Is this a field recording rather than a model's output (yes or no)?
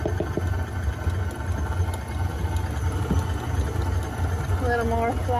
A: yes